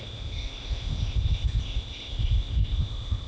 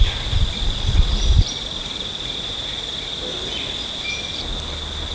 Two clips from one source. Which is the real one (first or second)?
second